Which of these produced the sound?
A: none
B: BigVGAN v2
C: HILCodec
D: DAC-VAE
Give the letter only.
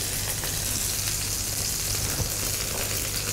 A